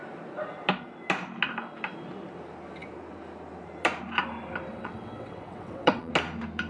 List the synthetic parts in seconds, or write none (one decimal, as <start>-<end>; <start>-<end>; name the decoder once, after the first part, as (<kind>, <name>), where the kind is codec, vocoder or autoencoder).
4.7-6.1 (vocoder, WaveNeXt)